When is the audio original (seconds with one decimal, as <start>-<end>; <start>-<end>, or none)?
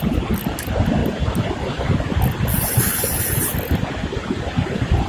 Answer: 0.0-5.1